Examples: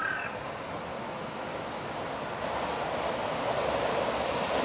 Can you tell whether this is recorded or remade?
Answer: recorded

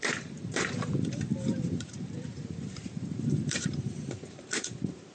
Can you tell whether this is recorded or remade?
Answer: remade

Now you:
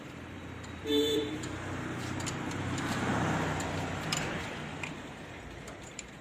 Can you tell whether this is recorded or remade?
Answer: remade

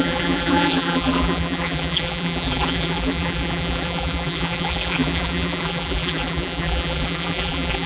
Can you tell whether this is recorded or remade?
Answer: remade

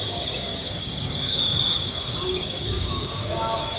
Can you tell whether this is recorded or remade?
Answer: remade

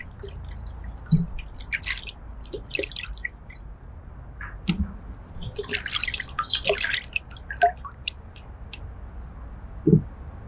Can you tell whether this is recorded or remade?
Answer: recorded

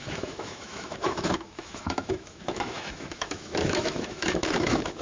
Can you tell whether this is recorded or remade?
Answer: remade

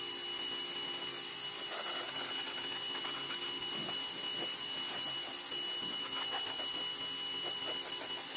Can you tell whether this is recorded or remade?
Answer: recorded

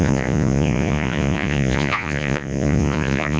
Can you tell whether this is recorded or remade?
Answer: remade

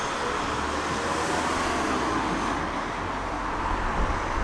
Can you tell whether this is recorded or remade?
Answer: recorded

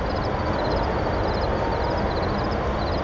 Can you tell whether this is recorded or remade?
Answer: recorded